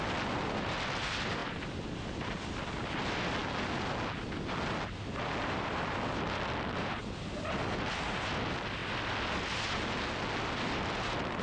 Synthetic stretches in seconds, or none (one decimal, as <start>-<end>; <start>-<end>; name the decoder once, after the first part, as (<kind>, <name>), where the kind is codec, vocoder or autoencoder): none